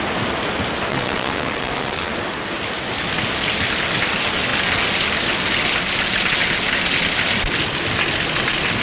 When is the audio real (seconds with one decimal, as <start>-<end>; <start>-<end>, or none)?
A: 0.0-0.9; 2.1-8.8